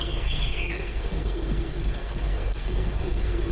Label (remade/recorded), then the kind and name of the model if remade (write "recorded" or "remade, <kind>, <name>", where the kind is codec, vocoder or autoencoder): remade, codec, SNAC